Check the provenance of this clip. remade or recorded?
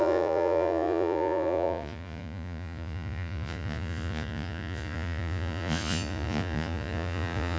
remade